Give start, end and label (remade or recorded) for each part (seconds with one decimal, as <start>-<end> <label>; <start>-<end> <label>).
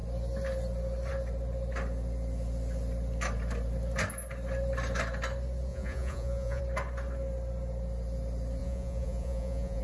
0.0-5.7 recorded; 5.7-6.6 remade; 6.6-8.6 recorded; 8.6-9.8 remade